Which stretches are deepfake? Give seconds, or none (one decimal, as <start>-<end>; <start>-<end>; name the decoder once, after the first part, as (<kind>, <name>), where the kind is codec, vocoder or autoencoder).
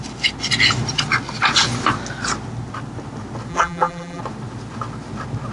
3.5-4.2 (vocoder, BigVGAN v2)